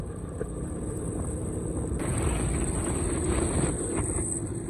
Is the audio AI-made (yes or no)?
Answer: no